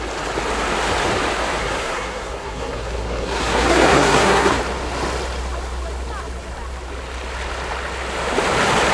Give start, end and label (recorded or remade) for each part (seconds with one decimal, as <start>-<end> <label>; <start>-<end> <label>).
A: 0.0-1.6 recorded; 1.6-4.6 remade; 4.6-8.9 recorded